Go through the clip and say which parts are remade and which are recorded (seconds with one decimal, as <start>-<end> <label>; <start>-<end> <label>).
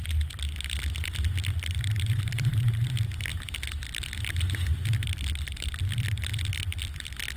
0.0-7.4 remade